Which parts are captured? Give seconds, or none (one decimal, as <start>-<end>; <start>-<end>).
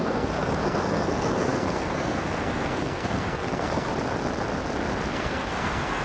3.9-5.1